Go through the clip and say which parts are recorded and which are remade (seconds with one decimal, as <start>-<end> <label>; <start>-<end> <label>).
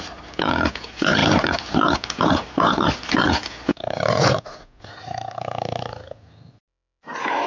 0.0-7.5 recorded